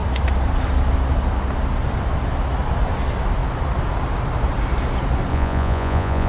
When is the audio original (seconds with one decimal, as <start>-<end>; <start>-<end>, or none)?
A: 0.0-5.3